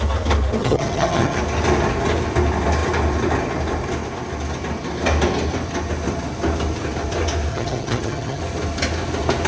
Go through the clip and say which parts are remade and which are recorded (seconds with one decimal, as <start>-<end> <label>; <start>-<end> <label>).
0.0-0.6 recorded; 0.6-1.4 remade; 1.4-7.5 recorded; 7.5-8.4 remade; 8.4-9.5 recorded